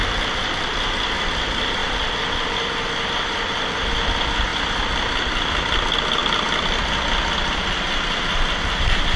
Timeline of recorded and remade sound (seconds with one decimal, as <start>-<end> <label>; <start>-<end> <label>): 0.0-1.8 recorded; 1.8-2.4 remade; 2.4-9.2 recorded